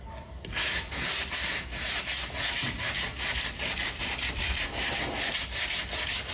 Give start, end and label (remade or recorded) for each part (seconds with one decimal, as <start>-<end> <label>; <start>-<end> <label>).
0.0-3.1 recorded; 3.1-4.6 remade; 4.6-6.3 recorded